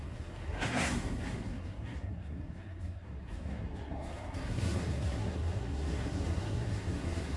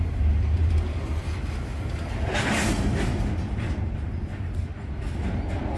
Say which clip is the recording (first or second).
second